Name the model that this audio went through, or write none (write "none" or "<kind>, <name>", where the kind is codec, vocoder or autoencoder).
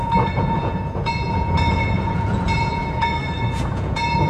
vocoder, Vocos